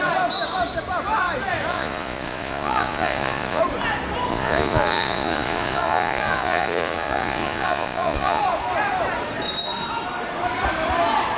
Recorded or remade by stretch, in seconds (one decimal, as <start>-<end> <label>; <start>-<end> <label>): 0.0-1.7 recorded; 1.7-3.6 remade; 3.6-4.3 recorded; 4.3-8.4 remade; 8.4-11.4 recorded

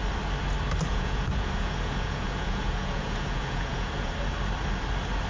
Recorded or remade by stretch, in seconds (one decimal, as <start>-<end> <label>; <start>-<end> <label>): 0.0-0.9 recorded; 0.9-4.1 remade; 4.1-5.3 recorded

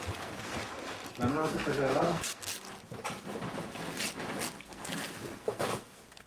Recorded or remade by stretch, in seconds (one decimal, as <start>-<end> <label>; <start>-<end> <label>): 0.0-0.5 remade; 0.5-1.3 recorded; 1.3-2.4 remade; 2.4-4.6 recorded; 4.6-6.3 remade